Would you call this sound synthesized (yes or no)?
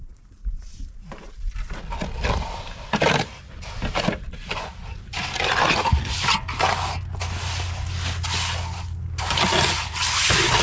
no